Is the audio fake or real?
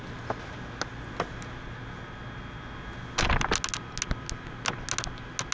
real